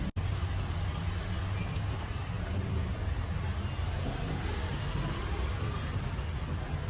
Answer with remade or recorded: recorded